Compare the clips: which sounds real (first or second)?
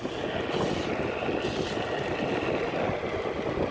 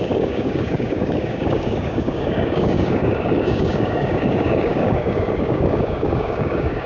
first